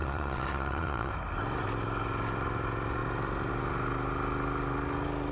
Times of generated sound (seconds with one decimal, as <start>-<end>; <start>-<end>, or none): 0.0-1.1